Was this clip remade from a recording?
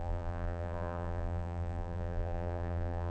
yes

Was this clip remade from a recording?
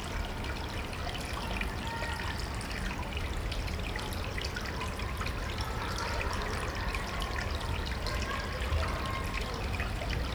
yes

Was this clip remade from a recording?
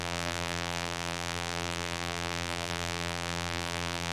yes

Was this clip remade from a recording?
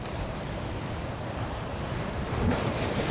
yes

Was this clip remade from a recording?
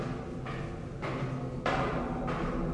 no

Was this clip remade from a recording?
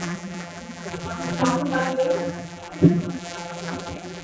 yes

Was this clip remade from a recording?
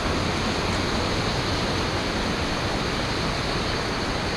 no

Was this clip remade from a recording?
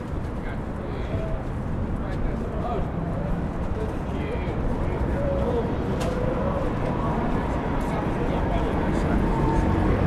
yes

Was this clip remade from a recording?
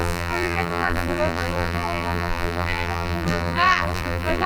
yes